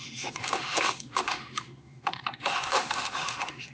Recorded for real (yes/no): no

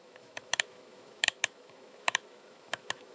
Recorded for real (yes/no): no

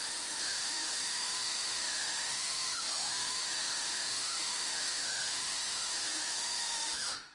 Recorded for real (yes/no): no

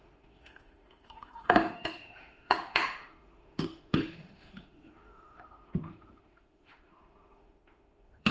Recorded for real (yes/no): no